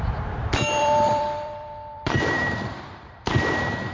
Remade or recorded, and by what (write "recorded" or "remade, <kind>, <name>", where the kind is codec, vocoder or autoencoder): remade, vocoder, BigVGAN v2